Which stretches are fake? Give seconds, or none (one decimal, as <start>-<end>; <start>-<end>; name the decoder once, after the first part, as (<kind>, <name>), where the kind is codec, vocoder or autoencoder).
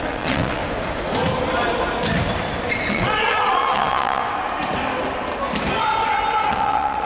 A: 0.0-0.6 (vocoder, WaveNeXt); 2.9-4.2; 6.5-7.0